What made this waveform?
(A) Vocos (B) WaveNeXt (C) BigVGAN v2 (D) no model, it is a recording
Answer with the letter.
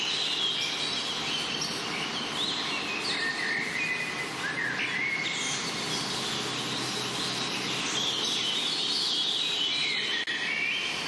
D